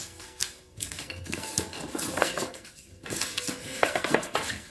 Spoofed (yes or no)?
yes